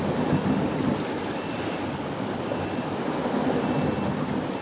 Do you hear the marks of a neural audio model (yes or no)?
no